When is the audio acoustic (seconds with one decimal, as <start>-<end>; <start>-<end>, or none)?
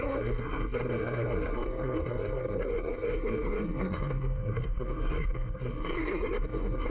none